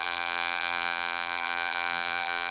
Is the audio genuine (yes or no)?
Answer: no